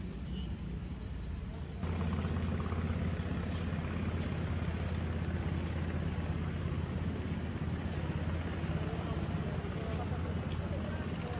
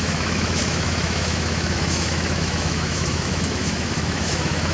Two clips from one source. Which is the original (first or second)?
first